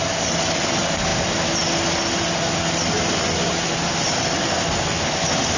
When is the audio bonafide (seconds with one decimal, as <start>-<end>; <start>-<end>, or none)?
0.0-5.6